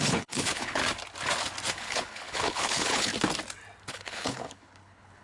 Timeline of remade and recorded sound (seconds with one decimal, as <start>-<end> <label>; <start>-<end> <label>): 0.0-0.8 remade; 0.8-1.7 recorded; 1.7-3.1 remade; 3.1-3.9 recorded; 3.9-5.2 remade